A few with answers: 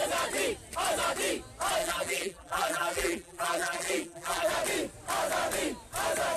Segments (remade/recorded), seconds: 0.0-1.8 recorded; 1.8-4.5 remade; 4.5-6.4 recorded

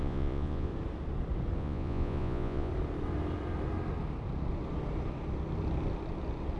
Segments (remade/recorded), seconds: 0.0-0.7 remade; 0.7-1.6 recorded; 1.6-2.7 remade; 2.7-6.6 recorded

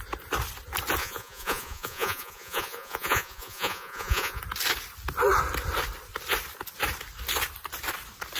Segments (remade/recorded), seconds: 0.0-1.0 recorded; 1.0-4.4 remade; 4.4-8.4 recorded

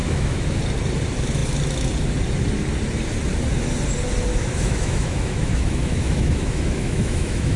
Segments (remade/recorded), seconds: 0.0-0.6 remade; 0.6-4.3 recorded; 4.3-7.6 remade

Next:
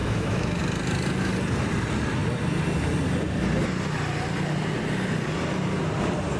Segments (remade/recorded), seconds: 0.0-0.6 remade; 0.6-6.4 recorded

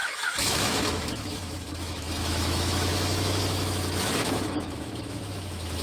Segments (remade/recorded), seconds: 0.0-5.8 remade